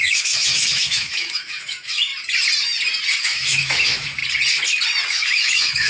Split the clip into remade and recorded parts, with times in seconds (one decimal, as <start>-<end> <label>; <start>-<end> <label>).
0.0-2.1 remade; 2.1-3.2 recorded; 3.2-4.2 remade; 4.2-5.1 recorded; 5.1-5.9 remade

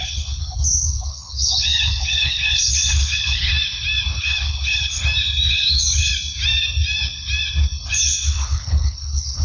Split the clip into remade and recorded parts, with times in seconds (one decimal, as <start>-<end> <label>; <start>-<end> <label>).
0.0-3.5 remade; 3.5-4.2 recorded; 4.2-5.0 remade; 5.0-5.5 recorded; 5.5-6.1 remade; 6.1-7.9 recorded; 7.9-9.4 remade